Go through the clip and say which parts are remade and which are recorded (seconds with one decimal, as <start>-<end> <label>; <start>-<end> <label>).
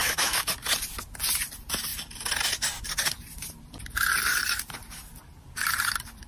0.0-0.5 remade; 0.5-6.3 recorded